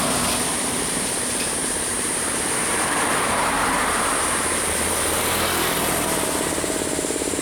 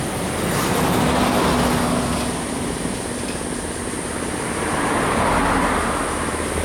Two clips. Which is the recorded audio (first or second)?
second